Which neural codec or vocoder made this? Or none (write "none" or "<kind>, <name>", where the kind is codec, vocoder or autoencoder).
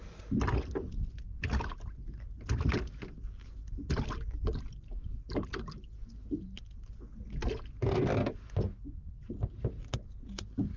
none